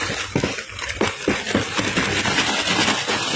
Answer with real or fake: real